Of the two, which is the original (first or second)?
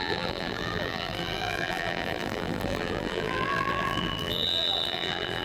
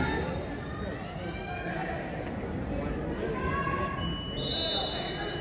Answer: second